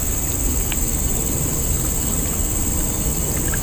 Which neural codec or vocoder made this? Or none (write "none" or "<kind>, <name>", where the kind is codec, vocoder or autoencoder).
none